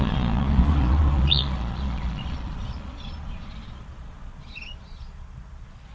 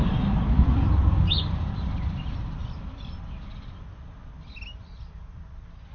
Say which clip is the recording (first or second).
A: second